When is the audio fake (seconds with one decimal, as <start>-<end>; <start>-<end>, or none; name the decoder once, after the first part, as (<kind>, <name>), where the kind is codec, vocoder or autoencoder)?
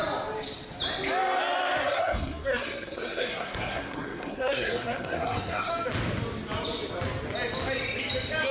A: 1.8-5.7 (codec, SNAC)